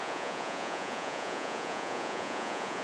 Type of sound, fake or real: fake